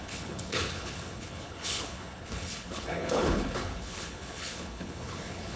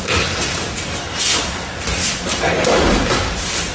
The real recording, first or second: second